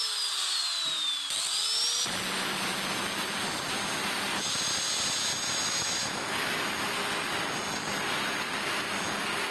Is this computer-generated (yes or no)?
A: no